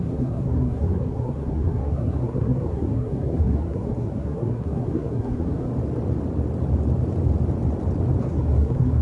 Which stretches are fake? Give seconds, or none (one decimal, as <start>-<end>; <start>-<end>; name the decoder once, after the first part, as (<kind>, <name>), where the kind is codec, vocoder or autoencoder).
0.0-5.7 (codec, SNAC); 8.2-9.0